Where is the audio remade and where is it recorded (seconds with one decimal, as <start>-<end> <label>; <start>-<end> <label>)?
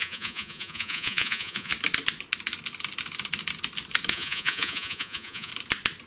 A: 0.0-1.7 remade; 1.7-4.1 recorded; 4.1-5.5 remade; 5.5-6.1 recorded